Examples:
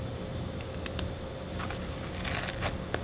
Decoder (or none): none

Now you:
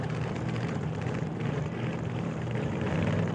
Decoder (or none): vocoder, BigVGAN v2